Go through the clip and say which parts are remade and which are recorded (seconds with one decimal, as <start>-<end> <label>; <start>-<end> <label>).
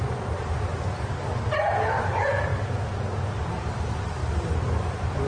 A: 0.0-0.7 remade; 0.7-2.1 recorded; 2.1-2.5 remade; 2.5-3.2 recorded; 3.2-5.3 remade